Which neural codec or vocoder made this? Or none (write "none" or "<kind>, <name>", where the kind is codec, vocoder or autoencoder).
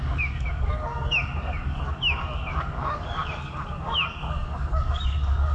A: codec, DAC